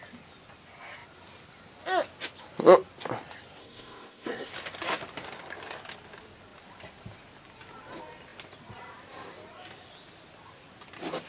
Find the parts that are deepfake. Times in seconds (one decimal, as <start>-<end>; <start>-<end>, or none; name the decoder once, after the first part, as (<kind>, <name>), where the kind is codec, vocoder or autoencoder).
3.6-4.5 (codec, SNAC)